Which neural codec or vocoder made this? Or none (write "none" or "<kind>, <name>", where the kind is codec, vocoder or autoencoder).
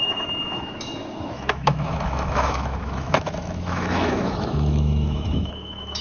autoencoder, DAC-VAE